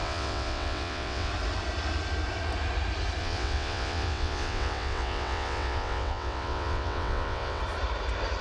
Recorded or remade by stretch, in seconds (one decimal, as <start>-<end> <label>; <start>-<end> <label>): 0.0-1.3 remade; 1.3-3.2 recorded; 3.2-7.6 remade; 7.6-8.4 recorded